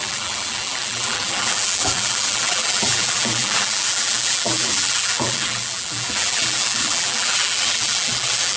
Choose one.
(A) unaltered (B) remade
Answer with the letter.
B